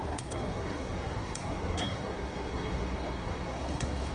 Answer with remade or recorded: remade